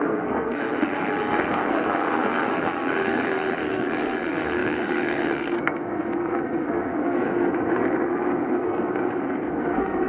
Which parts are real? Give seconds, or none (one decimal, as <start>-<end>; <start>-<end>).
none